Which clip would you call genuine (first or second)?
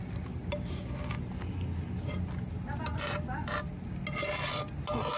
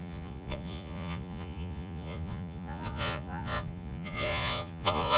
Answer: first